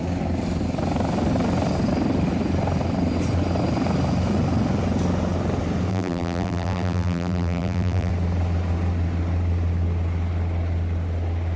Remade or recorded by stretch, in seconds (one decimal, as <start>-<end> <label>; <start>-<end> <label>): 0.0-5.9 recorded; 5.9-8.1 remade; 8.1-11.6 recorded